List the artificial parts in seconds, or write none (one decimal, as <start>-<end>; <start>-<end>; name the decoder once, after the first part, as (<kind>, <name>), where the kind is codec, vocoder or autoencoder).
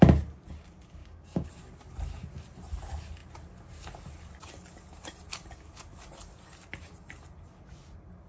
1.0-1.5 (codec, DAC)